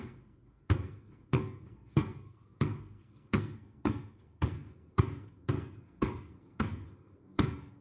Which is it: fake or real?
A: fake